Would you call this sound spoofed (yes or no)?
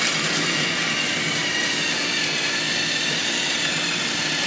no